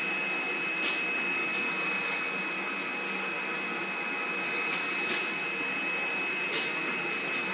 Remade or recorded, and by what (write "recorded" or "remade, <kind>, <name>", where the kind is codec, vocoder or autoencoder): recorded